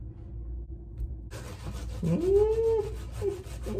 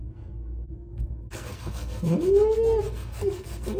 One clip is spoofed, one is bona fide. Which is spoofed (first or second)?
second